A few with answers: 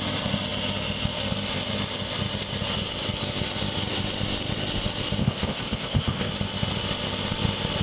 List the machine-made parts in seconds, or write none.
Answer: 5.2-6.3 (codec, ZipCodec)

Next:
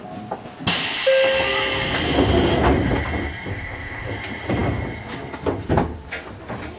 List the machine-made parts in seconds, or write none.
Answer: 3.5-4.1 (codec, ZipCodec)

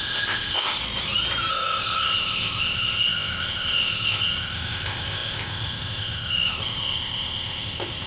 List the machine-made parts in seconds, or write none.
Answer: 0.0-0.8 (codec, ZipCodec); 1.5-8.1

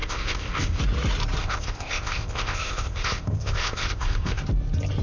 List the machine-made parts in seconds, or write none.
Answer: 0.0-0.8 (codec, ZipCodec); 1.4-4.4

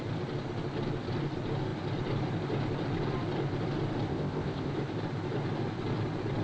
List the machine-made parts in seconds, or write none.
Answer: 4.1-4.7 (codec, ZipCodec)

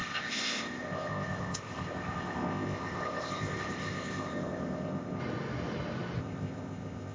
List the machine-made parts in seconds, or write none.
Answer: 0.0-5.2 (codec, ZipCodec); 6.2-7.1

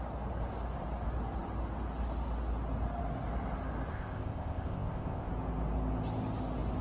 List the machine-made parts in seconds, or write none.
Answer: 3.9-5.3 (codec, ZipCodec)

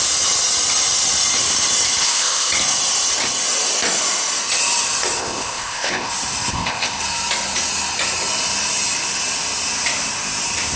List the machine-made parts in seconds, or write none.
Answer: 2.0-2.5 (codec, ZipCodec); 5.2-6.1; 6.5-7.0